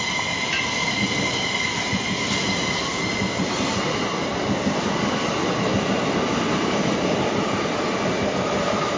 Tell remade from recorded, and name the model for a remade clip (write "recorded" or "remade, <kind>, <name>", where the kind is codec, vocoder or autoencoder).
recorded